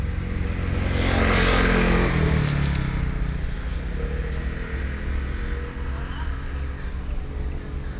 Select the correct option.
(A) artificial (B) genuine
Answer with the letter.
B